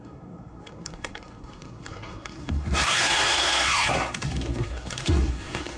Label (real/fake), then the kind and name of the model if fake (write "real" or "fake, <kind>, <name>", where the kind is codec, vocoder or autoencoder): fake, codec, SNAC